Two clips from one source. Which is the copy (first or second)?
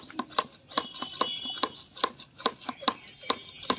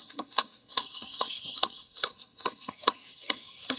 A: second